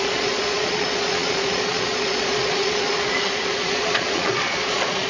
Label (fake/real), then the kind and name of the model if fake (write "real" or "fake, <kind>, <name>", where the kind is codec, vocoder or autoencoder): fake, vocoder, Vocos